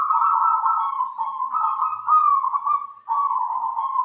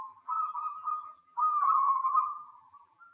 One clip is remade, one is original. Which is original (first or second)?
first